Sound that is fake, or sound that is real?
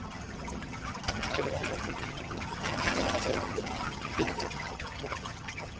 fake